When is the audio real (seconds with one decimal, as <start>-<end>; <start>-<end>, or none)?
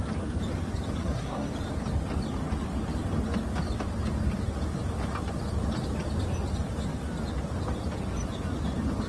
0.0-1.0; 1.5-9.1